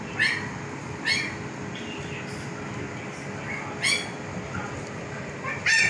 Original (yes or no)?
yes